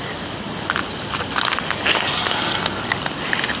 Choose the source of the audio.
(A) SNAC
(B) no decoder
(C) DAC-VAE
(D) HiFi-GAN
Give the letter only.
B